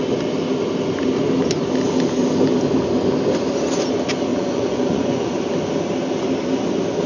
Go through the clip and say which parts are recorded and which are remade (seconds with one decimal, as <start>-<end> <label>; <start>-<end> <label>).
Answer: 0.0-4.3 recorded; 4.3-5.3 remade; 5.3-7.1 recorded

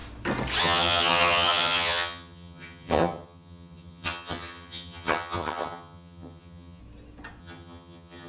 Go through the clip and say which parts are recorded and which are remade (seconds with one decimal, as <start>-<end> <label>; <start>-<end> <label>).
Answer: 0.0-0.6 recorded; 0.6-6.8 remade; 6.8-7.4 recorded; 7.4-8.3 remade

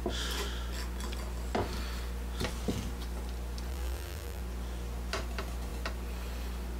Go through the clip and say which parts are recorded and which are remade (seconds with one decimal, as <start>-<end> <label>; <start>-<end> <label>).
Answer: 0.0-3.7 recorded; 3.7-4.4 remade; 4.4-6.8 recorded

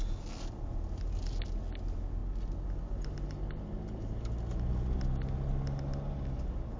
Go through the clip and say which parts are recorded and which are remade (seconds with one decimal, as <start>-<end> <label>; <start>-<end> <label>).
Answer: 0.0-6.8 recorded